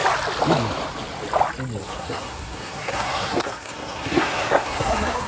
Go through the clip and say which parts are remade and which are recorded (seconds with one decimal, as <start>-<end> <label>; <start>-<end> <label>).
0.0-1.8 recorded; 1.8-5.3 remade